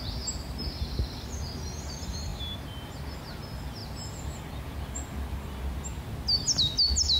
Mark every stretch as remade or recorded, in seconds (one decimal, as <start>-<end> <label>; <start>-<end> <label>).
0.0-3.8 recorded; 3.8-4.4 remade; 4.4-7.2 recorded